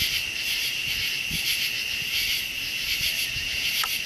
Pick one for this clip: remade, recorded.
recorded